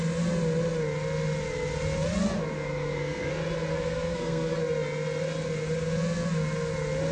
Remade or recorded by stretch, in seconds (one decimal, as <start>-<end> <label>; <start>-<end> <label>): 0.0-2.5 recorded; 2.5-3.3 remade; 3.3-3.7 recorded; 3.7-4.6 remade; 4.6-7.1 recorded